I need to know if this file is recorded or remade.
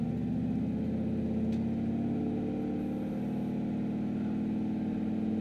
recorded